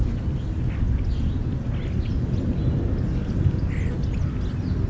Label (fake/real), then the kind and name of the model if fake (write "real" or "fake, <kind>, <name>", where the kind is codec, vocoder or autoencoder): real